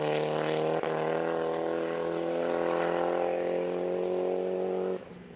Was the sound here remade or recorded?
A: recorded